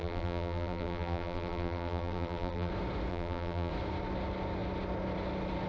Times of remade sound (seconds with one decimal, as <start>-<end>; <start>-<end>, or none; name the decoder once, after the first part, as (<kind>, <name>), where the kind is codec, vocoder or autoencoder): 0.0-2.7 (vocoder, BigVGAN v2); 3.1-3.7